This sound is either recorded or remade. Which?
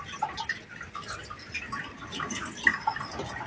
remade